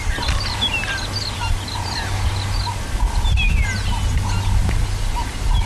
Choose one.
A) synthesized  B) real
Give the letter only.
B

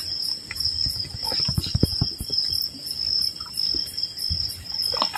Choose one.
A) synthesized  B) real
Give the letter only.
B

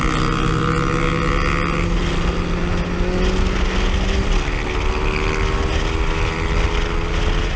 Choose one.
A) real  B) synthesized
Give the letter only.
A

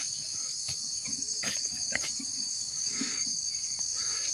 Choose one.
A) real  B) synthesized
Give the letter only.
B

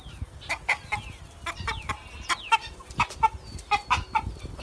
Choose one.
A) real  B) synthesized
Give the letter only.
A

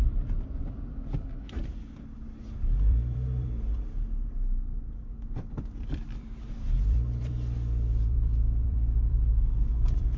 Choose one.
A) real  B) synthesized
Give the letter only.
B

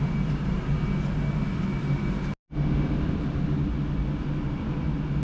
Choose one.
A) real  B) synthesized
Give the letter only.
A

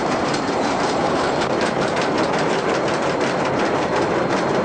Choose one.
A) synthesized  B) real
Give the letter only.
A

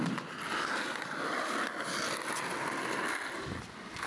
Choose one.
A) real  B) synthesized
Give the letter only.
A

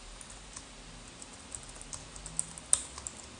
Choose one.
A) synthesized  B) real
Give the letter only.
B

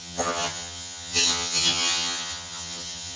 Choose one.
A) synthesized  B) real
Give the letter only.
A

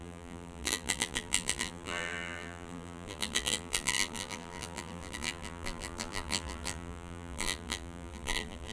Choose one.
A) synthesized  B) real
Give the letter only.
A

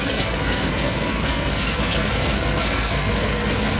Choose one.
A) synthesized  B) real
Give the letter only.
A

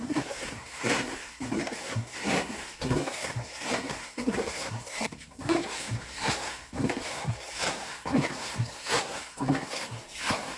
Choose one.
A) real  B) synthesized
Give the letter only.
B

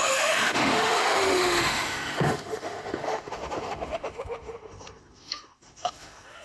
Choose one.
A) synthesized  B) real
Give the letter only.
A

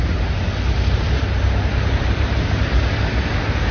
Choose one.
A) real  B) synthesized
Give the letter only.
A